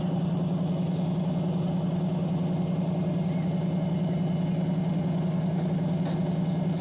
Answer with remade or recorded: recorded